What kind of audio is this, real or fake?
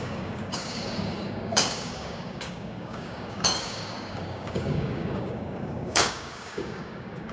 fake